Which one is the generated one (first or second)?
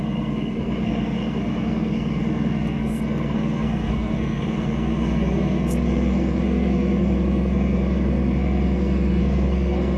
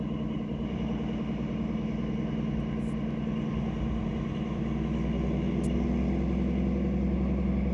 first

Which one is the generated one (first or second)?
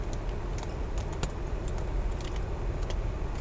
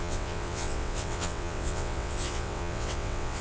second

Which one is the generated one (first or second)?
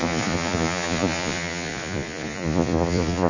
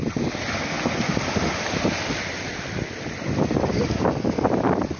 first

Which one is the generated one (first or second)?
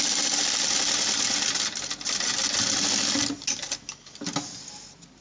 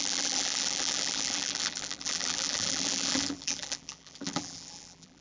second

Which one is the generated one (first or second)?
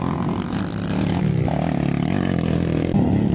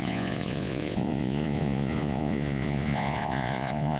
second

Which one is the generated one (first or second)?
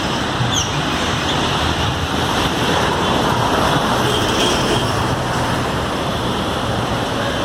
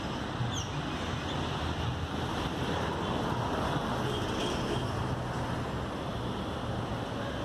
first